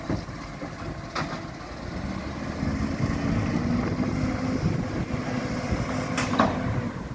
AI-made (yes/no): no